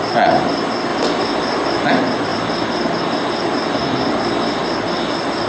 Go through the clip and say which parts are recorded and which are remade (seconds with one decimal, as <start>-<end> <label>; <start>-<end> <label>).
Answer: 0.0-0.9 remade; 0.9-1.9 recorded; 1.9-5.5 remade